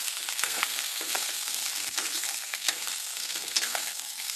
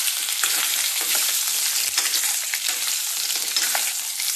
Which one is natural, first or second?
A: second